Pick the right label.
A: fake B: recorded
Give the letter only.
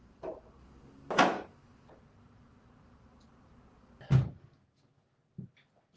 B